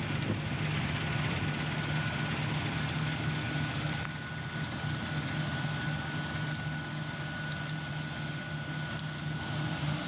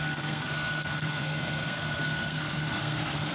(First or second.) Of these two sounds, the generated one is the second